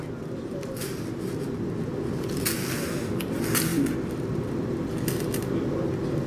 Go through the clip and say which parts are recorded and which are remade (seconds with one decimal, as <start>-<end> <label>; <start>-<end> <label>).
0.0-6.3 recorded